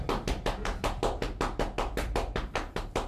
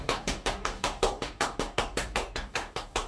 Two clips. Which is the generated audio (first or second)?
second